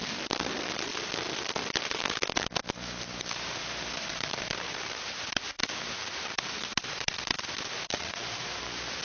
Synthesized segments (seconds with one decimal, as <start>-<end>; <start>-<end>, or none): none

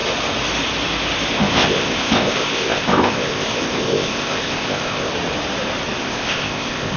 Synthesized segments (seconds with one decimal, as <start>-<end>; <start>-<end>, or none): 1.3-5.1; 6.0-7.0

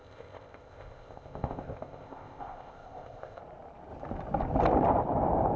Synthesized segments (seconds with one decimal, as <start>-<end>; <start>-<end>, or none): 0.0-3.4